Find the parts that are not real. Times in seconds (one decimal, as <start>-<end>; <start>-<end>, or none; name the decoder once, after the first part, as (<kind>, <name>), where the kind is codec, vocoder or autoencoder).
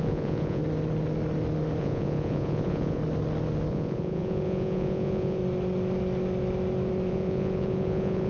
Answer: 0.0-0.6 (vocoder, Vocos); 1.8-3.0; 3.7-5.4; 7.1-8.3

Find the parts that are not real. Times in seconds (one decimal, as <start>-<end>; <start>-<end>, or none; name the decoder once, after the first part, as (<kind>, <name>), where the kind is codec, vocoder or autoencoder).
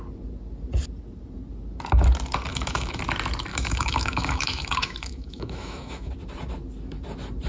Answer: 2.5-3.0 (autoencoder, DAC-VAE); 3.5-6.1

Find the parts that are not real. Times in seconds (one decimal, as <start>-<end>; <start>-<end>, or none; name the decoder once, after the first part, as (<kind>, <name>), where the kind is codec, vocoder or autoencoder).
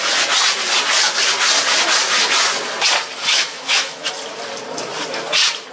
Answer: 3.3-4.1 (autoencoder, DAC-VAE)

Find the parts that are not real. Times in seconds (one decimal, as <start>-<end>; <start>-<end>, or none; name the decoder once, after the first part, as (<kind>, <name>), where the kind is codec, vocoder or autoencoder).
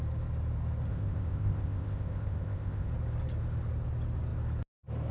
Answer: 0.9-2.9 (codec, ZipCodec)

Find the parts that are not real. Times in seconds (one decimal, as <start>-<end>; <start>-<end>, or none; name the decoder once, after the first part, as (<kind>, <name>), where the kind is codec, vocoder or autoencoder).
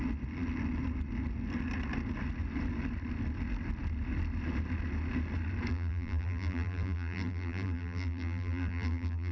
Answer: 5.7-9.3 (vocoder, BigVGAN v2)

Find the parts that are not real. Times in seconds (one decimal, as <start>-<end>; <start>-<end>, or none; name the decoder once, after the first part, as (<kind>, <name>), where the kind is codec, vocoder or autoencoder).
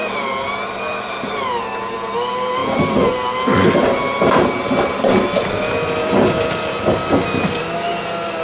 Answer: none